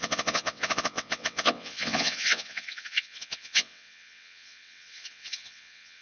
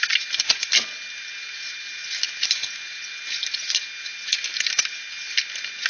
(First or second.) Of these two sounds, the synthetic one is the first